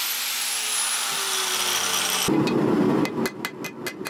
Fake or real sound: real